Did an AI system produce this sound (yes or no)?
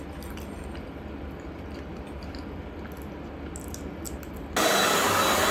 no